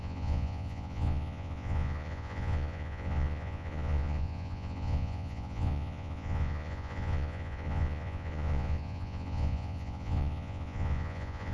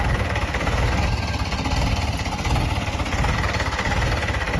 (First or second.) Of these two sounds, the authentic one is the second